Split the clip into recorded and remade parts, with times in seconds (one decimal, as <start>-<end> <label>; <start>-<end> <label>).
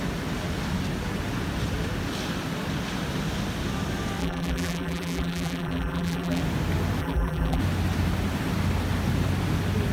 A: 0.0-4.2 recorded; 4.2-6.4 remade; 6.4-7.0 recorded; 7.0-7.6 remade; 7.6-9.9 recorded